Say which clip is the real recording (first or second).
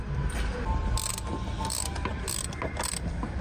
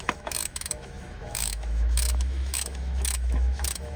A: first